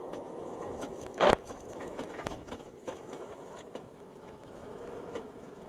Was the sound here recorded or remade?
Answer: remade